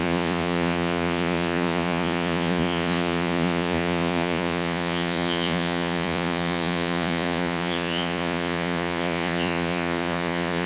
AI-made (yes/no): yes